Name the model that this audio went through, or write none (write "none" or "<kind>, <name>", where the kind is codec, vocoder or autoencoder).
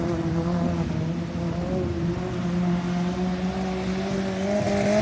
none